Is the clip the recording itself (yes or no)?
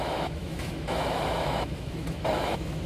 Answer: no